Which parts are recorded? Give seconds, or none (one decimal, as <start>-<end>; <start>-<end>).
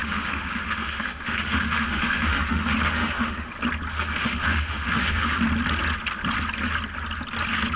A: 3.5-3.9; 5.4-7.8